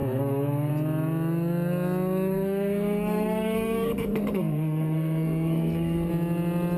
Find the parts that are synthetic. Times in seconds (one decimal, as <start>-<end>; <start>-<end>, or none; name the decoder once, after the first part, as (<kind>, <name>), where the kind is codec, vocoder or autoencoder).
0.0-0.7 (codec, SNAC); 2.3-6.1